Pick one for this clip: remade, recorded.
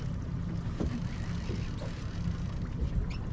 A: recorded